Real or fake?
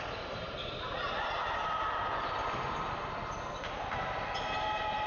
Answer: real